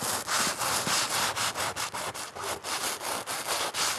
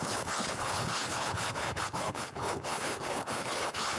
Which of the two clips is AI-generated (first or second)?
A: second